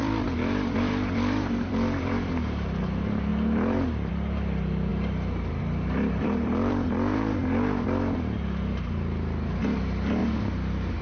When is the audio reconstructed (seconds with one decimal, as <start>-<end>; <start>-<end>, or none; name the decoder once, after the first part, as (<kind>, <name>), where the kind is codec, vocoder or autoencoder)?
0.0-4.9 (vocoder, BigVGAN v2); 5.6-7.4; 9.6-10.2